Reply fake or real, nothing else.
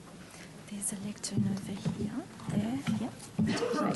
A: real